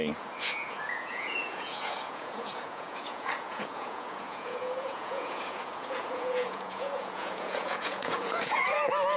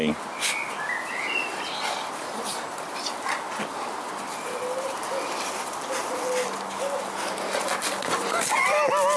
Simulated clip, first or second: first